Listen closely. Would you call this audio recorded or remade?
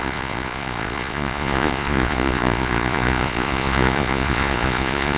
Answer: remade